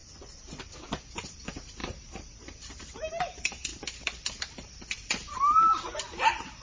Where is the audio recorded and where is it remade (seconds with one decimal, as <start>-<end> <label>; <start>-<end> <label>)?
0.0-1.0 recorded; 1.0-6.6 remade